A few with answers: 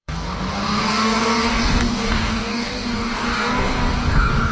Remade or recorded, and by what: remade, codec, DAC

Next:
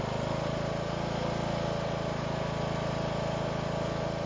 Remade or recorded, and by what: recorded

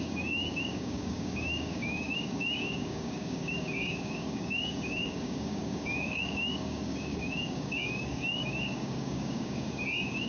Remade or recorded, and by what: remade, codec, DAC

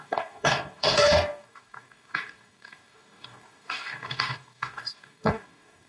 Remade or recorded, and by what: remade, codec, DAC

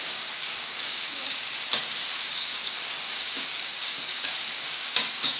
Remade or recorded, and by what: remade, codec, DAC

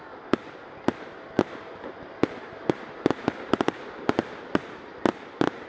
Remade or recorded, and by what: recorded